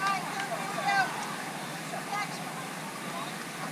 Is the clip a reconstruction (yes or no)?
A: no